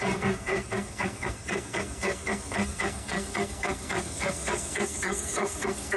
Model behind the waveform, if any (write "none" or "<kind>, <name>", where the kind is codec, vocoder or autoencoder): codec, SNAC